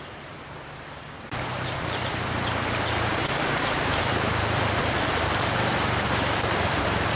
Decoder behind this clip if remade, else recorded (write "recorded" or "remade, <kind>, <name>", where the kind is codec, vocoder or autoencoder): remade, vocoder, BigVGAN v2